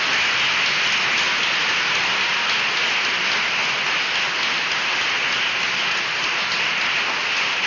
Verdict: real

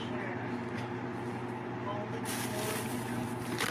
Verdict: real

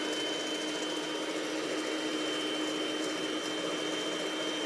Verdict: real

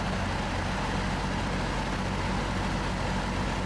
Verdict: real